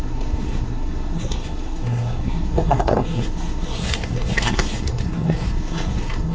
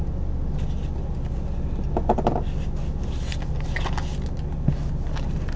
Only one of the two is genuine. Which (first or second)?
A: second